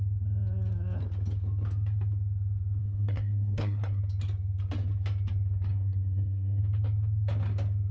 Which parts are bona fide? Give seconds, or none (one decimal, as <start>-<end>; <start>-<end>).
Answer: 0.0-2.8; 4.0-5.7; 6.6-7.9